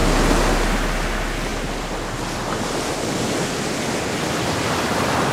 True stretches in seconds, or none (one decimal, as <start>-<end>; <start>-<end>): 0.0-5.3